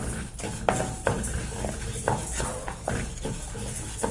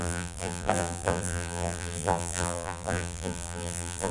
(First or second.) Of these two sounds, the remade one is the second